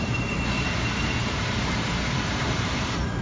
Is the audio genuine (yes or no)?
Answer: no